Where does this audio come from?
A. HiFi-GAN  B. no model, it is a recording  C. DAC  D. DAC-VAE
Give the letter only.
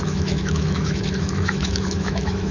D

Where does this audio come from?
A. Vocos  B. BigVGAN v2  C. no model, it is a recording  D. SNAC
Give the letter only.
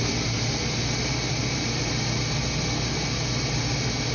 C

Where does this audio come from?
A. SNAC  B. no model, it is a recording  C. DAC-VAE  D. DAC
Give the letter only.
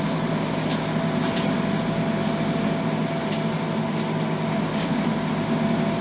B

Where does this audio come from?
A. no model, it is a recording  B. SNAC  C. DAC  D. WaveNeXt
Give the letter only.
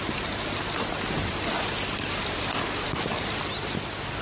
A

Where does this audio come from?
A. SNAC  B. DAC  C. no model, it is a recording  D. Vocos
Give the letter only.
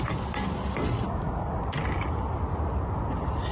C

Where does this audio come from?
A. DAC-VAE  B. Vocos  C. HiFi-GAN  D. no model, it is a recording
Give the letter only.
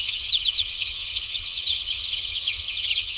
C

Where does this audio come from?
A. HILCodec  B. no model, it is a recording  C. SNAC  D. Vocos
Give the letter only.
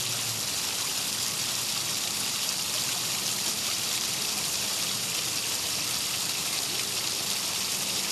B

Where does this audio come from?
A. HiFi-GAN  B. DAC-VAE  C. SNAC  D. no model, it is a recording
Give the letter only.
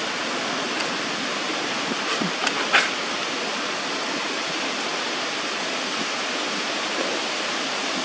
D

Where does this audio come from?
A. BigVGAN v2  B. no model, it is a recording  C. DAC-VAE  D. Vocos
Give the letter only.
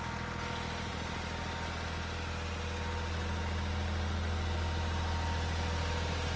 B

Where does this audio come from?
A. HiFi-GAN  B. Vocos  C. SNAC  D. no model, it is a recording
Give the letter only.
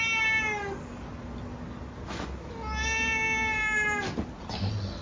D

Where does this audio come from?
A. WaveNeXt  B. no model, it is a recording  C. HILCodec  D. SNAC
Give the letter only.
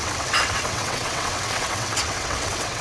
A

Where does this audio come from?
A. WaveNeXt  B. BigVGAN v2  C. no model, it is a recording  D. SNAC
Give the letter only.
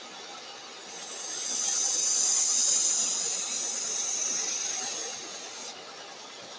C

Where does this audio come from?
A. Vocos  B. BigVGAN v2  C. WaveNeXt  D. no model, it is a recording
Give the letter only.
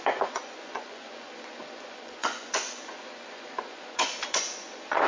A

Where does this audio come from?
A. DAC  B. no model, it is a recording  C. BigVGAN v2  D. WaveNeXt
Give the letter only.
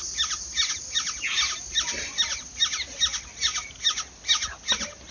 B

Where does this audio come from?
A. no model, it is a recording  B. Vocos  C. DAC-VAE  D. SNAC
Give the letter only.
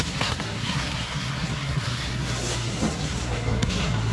D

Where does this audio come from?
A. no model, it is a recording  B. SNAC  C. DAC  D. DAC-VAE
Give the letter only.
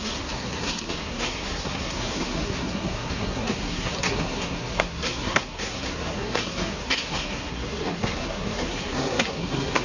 B